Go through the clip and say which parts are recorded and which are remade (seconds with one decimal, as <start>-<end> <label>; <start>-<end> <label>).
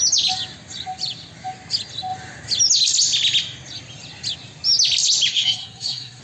0.0-5.3 recorded; 5.3-6.2 remade